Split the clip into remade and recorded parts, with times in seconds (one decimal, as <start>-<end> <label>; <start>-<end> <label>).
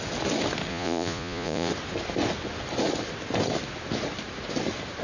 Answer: 0.0-0.7 recorded; 0.7-1.7 remade; 1.7-5.0 recorded